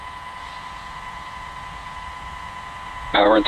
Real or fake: fake